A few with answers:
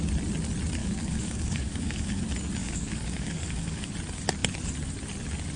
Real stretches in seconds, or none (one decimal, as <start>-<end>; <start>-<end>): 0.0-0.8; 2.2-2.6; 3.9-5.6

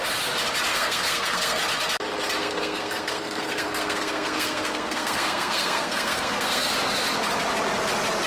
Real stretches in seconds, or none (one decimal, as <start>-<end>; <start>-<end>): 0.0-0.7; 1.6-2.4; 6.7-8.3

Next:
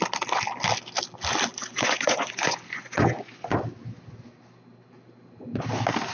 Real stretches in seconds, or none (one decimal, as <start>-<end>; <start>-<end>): 0.0-1.6; 3.6-6.1

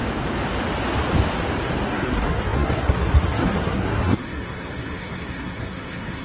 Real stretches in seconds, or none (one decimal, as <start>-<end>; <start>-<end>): 0.0-1.8

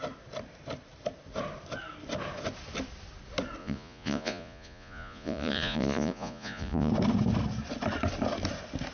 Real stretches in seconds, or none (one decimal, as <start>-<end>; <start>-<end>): 0.0-3.6; 6.9-8.9

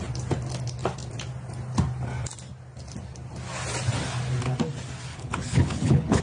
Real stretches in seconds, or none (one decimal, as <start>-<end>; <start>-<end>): 0.0-5.1